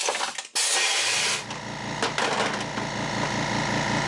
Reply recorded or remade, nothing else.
recorded